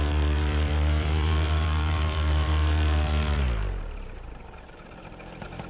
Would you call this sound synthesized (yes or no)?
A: yes